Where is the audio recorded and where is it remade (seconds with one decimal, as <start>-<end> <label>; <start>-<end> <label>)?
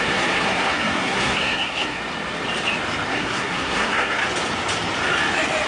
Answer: 0.0-2.0 remade; 2.0-3.1 recorded; 3.1-4.2 remade; 4.2-5.7 recorded